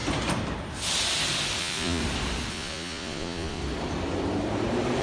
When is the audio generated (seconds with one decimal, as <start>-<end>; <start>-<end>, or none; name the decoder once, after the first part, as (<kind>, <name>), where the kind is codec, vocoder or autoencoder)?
1.6-2.0 (vocoder, Vocos); 2.5-3.6